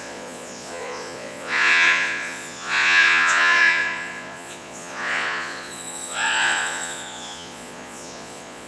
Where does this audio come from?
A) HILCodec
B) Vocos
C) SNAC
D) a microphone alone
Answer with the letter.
B